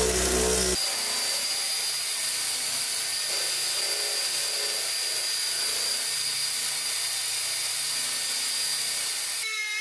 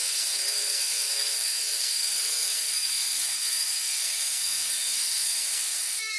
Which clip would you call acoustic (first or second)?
first